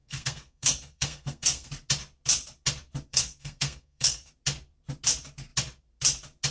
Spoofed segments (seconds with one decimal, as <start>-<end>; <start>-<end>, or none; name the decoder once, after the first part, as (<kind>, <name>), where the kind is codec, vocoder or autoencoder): 0.0-1.7 (codec, SNAC); 3.1-4.3